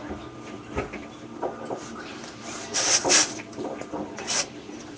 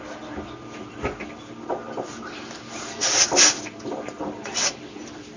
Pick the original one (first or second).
second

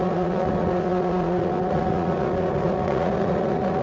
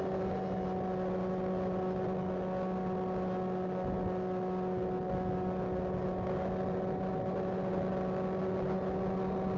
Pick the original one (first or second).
second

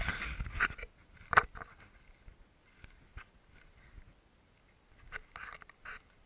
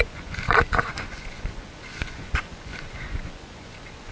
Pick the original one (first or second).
first